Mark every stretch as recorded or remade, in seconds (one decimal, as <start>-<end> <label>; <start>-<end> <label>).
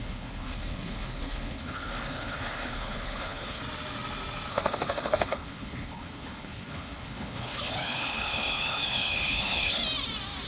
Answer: 0.0-3.6 remade; 3.6-4.5 recorded; 4.5-9.8 remade; 9.8-10.5 recorded